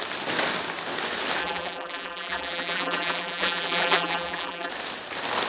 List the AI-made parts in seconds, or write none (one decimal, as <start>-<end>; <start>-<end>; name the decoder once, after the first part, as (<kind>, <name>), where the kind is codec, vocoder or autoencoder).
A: 1.4-4.7 (vocoder, BigVGAN v2)